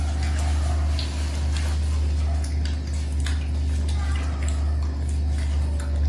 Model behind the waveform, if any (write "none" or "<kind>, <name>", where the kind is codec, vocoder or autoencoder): none